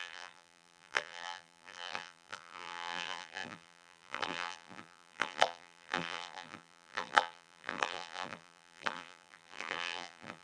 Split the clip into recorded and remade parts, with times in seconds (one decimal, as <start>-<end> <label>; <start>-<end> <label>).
0.0-10.4 remade